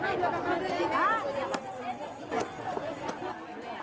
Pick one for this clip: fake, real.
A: real